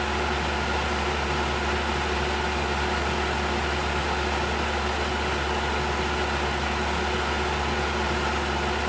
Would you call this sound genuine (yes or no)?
yes